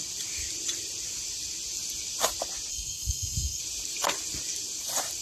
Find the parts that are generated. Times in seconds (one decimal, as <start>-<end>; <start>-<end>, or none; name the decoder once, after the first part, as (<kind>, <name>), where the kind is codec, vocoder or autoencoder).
2.7-3.6 (codec, SNAC)